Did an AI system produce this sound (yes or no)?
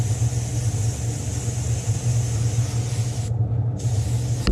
no